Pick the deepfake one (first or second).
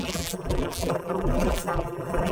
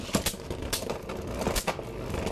first